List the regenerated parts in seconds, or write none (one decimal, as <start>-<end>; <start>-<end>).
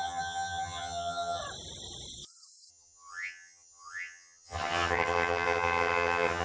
0.0-1.4; 2.7-6.4